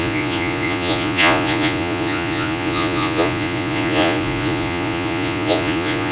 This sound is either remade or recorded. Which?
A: remade